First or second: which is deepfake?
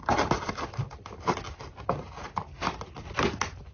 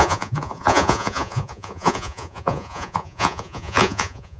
second